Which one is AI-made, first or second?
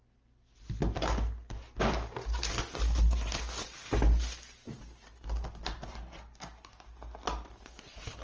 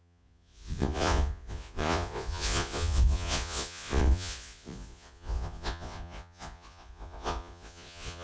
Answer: second